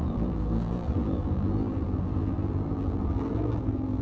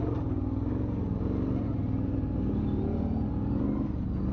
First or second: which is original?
second